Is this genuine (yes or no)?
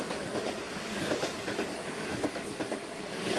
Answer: no